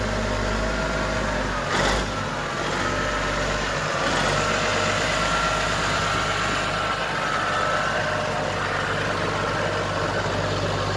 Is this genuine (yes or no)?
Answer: yes